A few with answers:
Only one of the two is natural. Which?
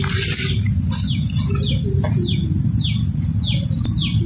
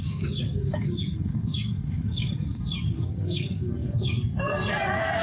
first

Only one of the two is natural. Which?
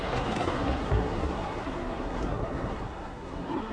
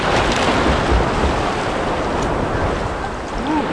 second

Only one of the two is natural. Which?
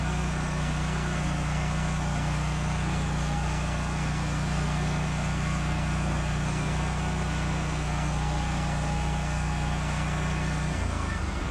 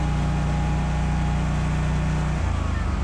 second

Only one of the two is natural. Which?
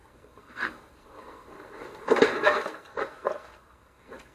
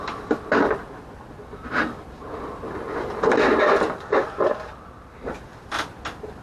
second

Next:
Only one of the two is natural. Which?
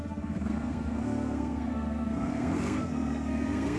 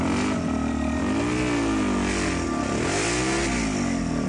second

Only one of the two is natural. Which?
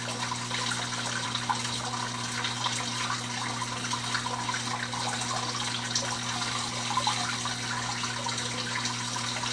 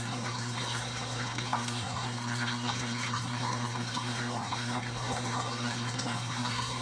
first